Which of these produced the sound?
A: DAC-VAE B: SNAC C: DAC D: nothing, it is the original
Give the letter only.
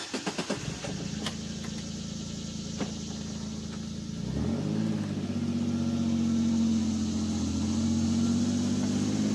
D